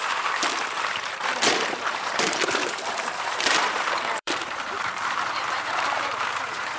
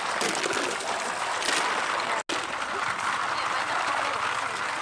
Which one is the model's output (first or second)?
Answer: first